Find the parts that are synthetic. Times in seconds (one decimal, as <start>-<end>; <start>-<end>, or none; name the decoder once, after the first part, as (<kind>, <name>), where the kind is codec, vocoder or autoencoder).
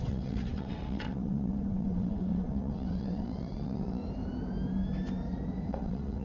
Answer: 0.0-4.0 (vocoder, WaveNeXt); 5.7-6.2